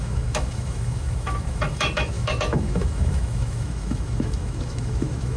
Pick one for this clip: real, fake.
fake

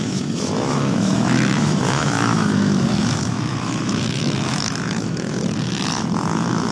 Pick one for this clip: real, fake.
fake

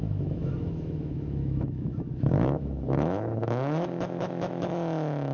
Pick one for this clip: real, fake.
fake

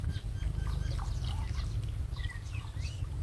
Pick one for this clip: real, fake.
real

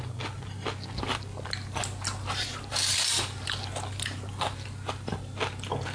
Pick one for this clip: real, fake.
real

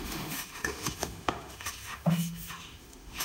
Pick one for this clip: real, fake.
fake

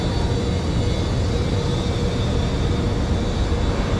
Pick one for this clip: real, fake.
real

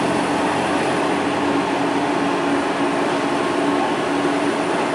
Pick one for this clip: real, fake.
real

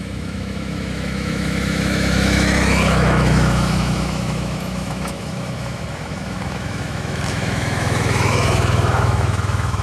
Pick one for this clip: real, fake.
fake